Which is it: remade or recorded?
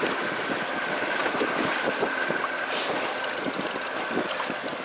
recorded